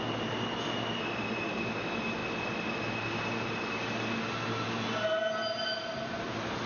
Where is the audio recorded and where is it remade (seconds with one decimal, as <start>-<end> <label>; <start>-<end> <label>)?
0.0-6.7 recorded